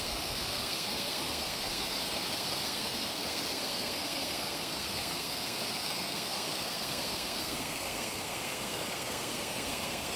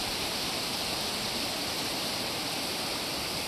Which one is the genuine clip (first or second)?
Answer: second